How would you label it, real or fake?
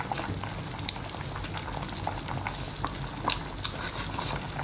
real